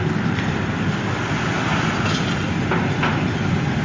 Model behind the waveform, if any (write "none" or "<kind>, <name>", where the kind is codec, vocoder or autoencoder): none